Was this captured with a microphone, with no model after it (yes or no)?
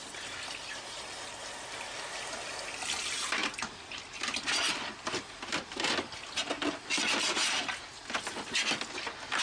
yes